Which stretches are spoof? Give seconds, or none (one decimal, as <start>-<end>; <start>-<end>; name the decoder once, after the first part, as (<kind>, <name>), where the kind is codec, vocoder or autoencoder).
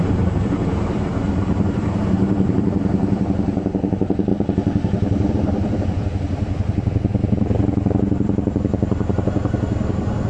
0.0-4.3 (vocoder, BigVGAN v2); 5.3-7.1; 8.0-10.3